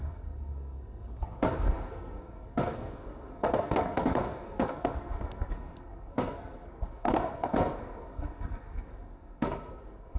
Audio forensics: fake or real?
fake